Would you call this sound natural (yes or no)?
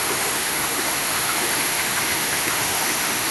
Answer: no